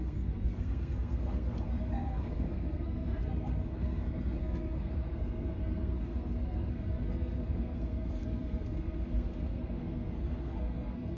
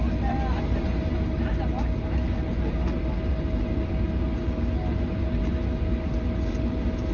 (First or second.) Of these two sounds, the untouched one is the second